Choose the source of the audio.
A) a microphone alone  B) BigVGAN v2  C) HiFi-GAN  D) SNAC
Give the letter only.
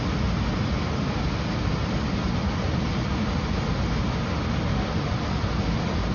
A